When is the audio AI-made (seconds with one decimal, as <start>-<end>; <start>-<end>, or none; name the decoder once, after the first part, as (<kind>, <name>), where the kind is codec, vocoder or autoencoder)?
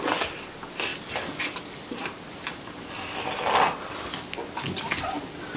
0.9-2.9 (vocoder, BigVGAN v2)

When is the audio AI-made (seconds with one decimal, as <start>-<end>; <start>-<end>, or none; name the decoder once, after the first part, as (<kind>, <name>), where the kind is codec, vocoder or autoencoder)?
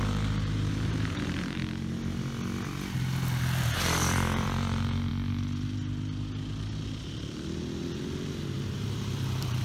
0.0-1.6 (vocoder, BigVGAN v2); 3.6-5.1; 8.7-9.6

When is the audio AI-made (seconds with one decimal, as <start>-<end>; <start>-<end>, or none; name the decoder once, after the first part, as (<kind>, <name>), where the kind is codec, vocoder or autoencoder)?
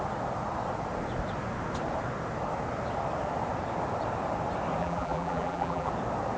4.8-5.9 (vocoder, BigVGAN v2)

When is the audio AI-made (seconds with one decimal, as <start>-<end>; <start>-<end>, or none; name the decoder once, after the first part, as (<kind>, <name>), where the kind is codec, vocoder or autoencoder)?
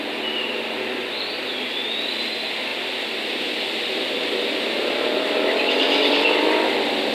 2.7-7.1 (vocoder, BigVGAN v2)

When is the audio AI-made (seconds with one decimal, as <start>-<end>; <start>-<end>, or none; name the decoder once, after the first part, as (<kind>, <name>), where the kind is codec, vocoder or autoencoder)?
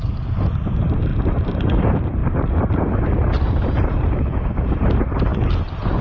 0.0-1.1 (vocoder, BigVGAN v2); 1.6-6.0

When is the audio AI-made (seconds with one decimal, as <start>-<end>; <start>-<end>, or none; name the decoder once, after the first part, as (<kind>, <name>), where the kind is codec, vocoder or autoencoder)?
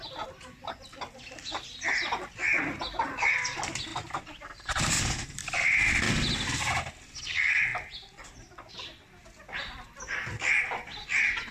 3.9-5.4 (vocoder, BigVGAN v2)